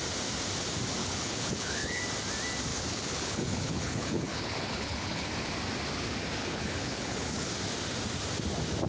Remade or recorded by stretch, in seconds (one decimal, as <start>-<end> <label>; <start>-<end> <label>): 0.0-1.0 recorded; 1.0-2.0 remade; 2.0-2.7 recorded; 2.7-5.3 remade; 5.3-6.4 recorded; 6.4-7.5 remade; 7.5-8.9 recorded